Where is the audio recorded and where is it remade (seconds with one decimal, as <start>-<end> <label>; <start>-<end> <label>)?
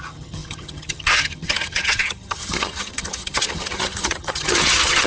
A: 0.0-5.1 remade